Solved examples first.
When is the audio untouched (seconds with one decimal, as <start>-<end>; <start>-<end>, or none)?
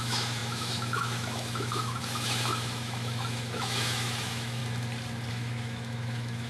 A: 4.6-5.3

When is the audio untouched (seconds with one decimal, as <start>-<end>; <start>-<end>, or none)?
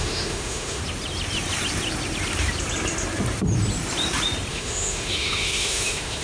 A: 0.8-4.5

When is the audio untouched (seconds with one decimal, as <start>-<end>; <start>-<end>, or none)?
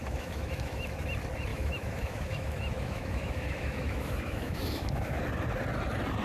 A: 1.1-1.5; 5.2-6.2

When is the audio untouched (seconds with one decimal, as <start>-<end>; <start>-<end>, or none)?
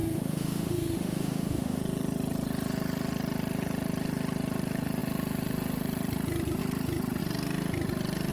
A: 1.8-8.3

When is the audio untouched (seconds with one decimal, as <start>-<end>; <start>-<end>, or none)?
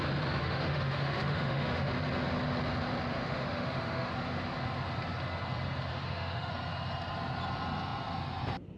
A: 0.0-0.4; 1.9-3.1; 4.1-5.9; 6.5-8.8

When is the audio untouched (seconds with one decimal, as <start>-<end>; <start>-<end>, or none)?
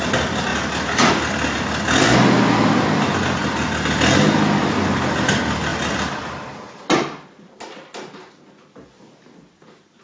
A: 0.0-10.0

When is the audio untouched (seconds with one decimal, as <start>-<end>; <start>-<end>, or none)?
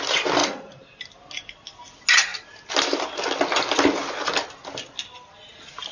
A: 0.0-5.9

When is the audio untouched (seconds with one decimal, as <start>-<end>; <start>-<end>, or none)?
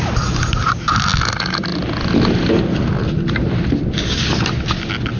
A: 0.0-5.2